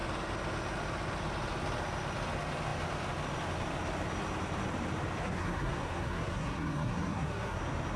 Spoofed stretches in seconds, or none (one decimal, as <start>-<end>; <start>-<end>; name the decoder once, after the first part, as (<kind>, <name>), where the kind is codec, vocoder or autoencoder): 5.2-7.6 (codec, SNAC)